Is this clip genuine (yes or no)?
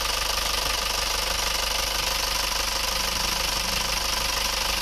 yes